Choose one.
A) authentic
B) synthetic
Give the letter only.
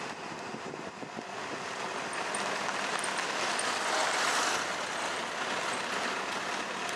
A